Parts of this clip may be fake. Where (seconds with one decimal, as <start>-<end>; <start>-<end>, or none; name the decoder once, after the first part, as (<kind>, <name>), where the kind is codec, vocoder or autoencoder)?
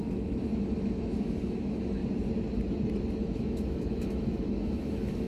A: 0.0-2.0 (autoencoder, DAC-VAE); 3.1-5.3